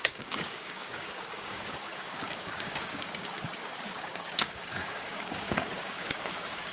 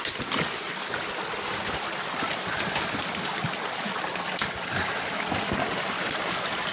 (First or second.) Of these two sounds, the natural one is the second